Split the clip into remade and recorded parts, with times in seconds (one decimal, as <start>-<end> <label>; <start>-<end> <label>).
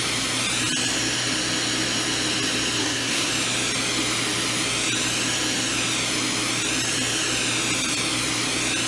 0.0-2.8 recorded; 2.8-3.3 remade; 3.3-8.9 recorded